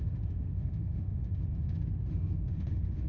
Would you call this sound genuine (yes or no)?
no